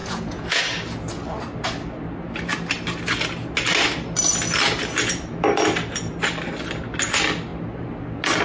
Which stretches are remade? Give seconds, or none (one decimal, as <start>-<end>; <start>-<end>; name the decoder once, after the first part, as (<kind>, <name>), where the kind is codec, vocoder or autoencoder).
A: 0.0-0.6 (vocoder, Vocos)